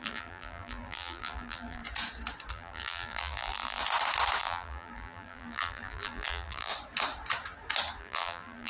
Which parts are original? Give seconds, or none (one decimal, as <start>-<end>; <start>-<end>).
1.8-2.5; 3.8-4.4; 6.7-8.0